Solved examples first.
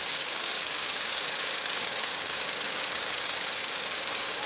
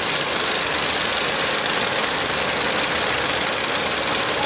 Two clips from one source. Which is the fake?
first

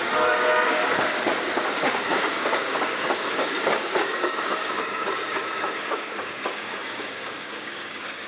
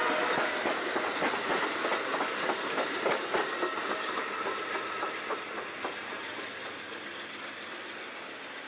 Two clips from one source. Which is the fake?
first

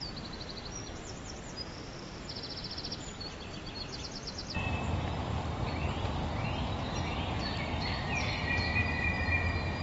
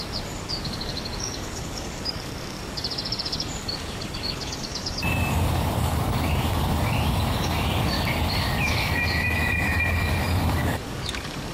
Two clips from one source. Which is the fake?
second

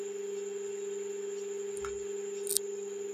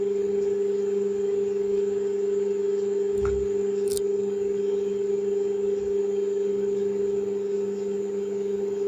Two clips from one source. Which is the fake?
second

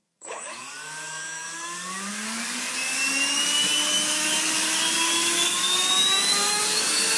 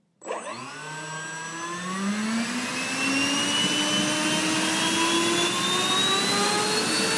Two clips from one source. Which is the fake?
first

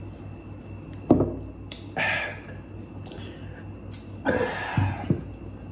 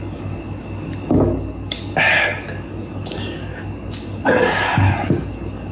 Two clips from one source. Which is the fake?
second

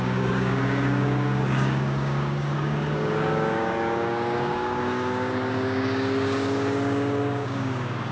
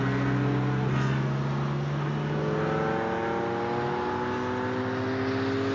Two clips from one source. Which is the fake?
first